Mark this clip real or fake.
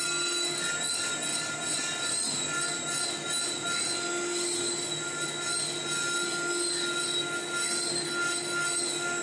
real